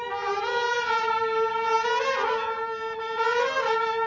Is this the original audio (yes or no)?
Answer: yes